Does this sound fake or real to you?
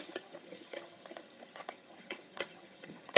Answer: fake